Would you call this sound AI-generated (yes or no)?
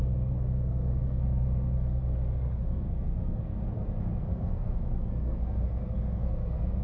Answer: yes